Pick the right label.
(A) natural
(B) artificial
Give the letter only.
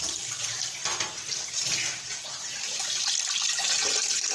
A